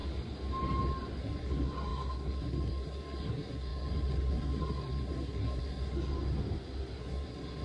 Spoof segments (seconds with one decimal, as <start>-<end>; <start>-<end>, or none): 1.2-6.1; 7.0-7.6